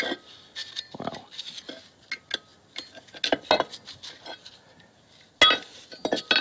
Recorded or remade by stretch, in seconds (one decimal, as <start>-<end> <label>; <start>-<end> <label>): 0.0-6.4 recorded